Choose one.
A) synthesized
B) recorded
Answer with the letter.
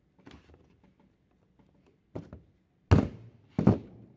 B